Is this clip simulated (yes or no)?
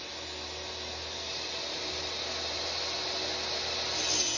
no